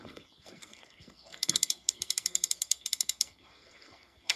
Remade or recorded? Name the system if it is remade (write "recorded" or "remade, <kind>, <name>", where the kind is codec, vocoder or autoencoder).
remade, codec, SNAC